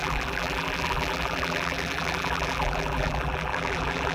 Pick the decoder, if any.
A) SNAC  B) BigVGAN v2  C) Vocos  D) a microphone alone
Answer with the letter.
B